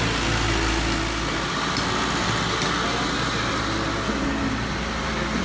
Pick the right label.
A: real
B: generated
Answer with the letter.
A